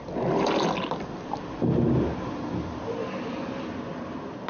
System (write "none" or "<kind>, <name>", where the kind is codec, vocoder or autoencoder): none